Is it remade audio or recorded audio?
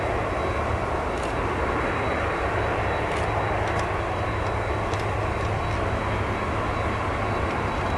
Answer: recorded